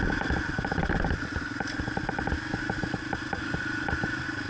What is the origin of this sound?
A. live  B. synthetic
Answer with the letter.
A